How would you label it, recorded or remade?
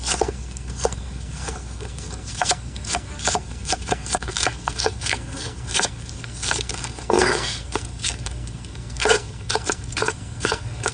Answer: remade